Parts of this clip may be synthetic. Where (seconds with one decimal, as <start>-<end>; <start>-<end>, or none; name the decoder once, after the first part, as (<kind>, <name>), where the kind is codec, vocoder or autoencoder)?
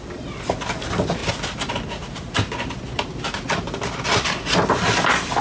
none